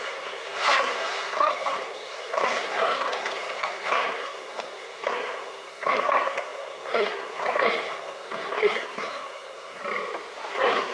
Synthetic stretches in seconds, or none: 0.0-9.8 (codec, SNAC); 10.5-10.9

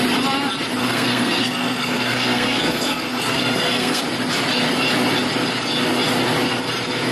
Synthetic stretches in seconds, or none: 0.8-4.0 (codec, SNAC)